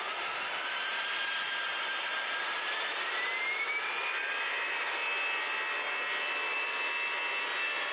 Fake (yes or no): no